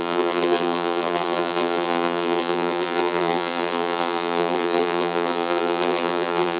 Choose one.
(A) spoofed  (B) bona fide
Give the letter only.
A